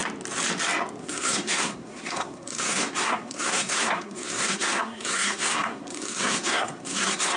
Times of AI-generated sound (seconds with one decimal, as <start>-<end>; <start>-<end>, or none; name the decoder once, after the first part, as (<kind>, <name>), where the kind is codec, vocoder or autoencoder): 1.0-7.4 (codec, SNAC)